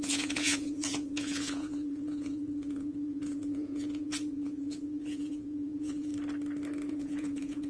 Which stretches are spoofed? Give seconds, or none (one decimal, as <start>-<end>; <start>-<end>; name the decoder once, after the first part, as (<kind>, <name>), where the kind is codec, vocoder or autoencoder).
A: 0.0-6.1 (vocoder, Vocos); 6.9-7.7

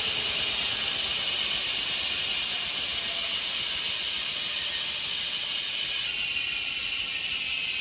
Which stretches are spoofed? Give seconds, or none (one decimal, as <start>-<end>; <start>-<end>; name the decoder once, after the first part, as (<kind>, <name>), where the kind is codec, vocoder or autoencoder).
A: none

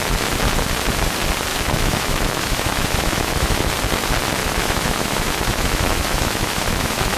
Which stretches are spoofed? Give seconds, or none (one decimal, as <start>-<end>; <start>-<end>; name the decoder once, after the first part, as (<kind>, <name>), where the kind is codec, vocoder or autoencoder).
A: 1.5-3.7 (autoencoder, DAC-VAE); 4.4-7.2

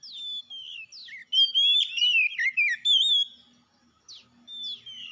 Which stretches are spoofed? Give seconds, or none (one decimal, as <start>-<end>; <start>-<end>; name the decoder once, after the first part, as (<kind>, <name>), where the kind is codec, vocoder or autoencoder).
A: none

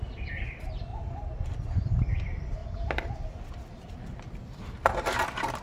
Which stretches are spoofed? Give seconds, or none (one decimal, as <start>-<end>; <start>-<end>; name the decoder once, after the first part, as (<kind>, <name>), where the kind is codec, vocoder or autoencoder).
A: 0.0-0.9 (vocoder, BigVGAN v2); 2.1-2.6; 4.5-5.6

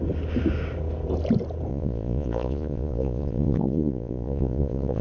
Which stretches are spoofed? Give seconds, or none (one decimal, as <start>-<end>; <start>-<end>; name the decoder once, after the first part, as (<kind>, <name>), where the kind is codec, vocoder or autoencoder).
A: 1.7-5.0 (vocoder, Vocos)

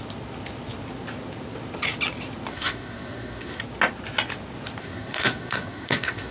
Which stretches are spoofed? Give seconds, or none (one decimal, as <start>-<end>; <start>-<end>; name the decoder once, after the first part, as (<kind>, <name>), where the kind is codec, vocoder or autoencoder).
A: 2.5-3.6 (codec, SNAC); 4.8-6.3